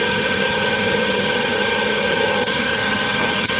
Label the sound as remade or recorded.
remade